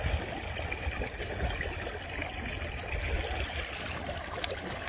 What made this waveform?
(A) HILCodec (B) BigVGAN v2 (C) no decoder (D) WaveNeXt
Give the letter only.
C